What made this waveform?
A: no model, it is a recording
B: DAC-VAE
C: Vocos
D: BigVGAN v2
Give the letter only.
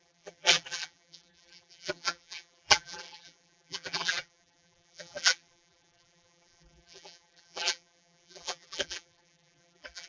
D